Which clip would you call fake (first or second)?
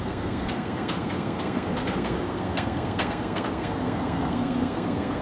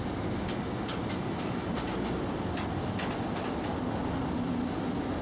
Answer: first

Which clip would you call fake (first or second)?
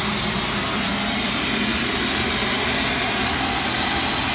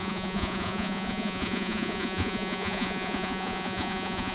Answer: second